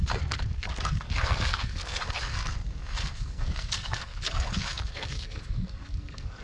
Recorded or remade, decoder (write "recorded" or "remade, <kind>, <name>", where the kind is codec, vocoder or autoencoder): remade, codec, SNAC